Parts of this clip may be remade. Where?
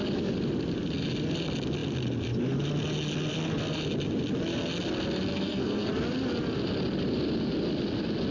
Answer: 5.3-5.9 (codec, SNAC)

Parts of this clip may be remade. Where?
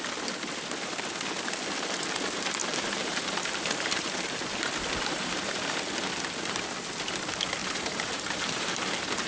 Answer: 2.6-5.8 (vocoder, BigVGAN v2); 7.6-8.9